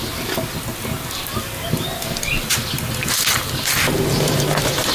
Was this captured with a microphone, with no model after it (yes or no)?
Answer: yes